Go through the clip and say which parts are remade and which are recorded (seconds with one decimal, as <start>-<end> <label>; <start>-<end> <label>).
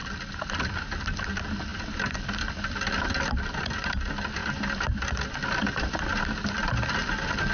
0.0-7.5 recorded